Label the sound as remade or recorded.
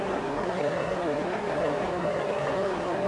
remade